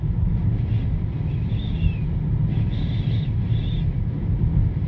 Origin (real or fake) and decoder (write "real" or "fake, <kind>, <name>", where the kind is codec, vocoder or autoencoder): real